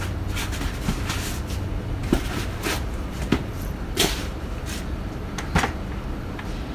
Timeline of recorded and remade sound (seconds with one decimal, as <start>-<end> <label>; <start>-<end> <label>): 0.0-2.0 recorded; 2.0-4.8 remade; 4.8-6.7 recorded